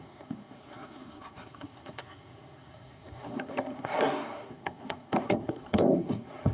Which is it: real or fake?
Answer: fake